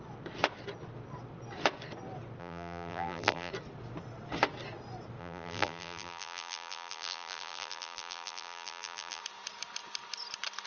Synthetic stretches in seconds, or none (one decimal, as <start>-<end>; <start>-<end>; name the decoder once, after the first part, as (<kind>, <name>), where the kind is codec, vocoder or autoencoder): 2.4-3.5 (vocoder, BigVGAN v2); 5.2-9.2